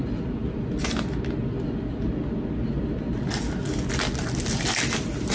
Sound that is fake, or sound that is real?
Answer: real